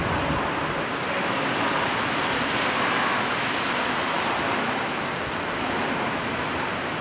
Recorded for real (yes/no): yes